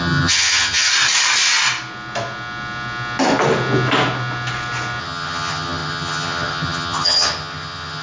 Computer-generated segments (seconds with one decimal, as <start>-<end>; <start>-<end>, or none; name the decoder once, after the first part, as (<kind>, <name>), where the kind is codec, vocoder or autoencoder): 0.0-0.9 (vocoder, HiFi-GAN); 5.0-8.0